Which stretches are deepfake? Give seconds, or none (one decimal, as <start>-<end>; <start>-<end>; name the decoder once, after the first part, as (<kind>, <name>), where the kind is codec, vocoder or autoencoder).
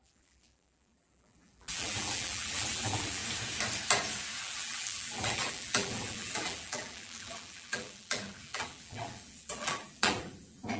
0.0-3.2 (vocoder, BigVGAN v2); 4.4-10.8